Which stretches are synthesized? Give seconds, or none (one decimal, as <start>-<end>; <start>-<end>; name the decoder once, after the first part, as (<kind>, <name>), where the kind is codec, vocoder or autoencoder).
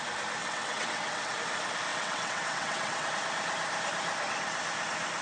0.4-1.3 (vocoder, WaveNeXt); 1.9-3.1